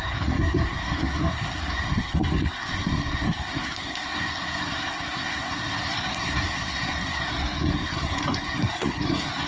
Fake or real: fake